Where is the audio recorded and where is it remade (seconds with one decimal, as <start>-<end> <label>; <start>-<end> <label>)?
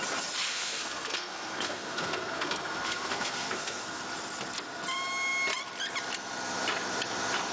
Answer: 0.0-0.5 recorded; 0.5-4.0 remade; 4.0-7.5 recorded